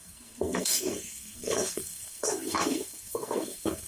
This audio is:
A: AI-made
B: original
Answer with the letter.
A